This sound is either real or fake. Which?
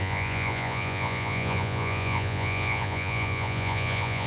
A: fake